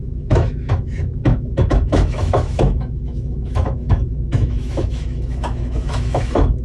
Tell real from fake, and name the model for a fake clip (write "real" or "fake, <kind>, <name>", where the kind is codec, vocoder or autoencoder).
fake, autoencoder, DAC-VAE